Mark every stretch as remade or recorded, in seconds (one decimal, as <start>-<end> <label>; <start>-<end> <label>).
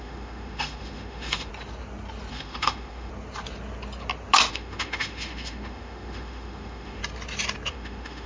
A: 0.0-1.5 remade; 1.5-2.3 recorded; 2.3-3.1 remade; 3.1-4.5 recorded; 4.5-7.0 remade; 7.0-7.7 recorded; 7.7-8.3 remade